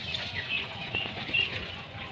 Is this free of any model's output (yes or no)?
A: no